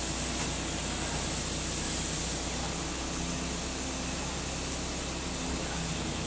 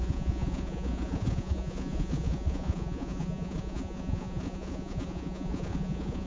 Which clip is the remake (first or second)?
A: second